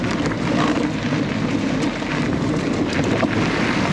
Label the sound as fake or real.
real